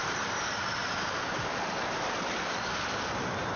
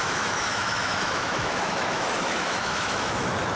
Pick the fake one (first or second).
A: second